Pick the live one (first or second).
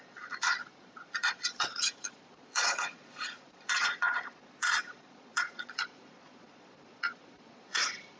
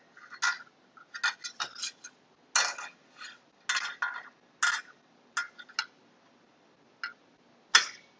second